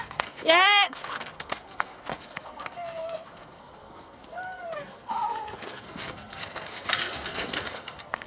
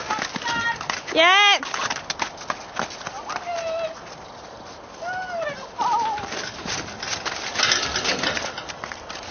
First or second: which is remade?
first